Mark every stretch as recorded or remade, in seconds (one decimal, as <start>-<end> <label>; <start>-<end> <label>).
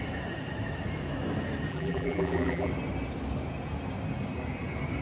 0.0-1.7 recorded; 1.7-2.7 remade; 2.7-5.0 recorded